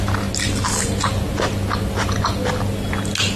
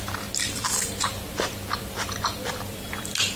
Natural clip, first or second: first